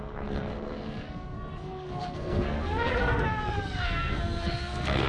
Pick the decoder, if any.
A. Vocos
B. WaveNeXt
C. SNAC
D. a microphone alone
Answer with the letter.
C